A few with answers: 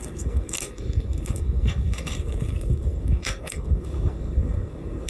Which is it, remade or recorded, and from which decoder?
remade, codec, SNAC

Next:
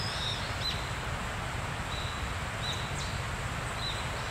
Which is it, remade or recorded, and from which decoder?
recorded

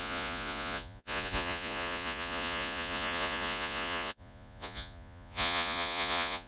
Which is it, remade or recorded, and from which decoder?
remade, vocoder, Vocos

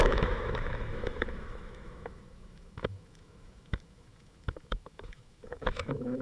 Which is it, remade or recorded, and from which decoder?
remade, autoencoder, DAC-VAE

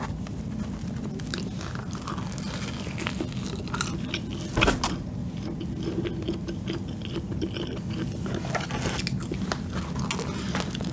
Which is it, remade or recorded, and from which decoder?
recorded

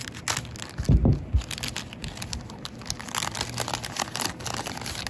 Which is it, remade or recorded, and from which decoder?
recorded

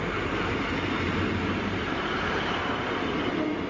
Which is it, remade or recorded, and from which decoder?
recorded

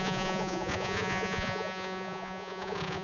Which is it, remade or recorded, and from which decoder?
remade, vocoder, Vocos